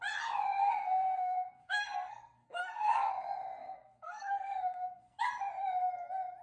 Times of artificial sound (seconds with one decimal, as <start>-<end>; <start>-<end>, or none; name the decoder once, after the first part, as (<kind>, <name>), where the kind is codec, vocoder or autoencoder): 0.6-3.1 (codec, SNAC); 3.6-5.2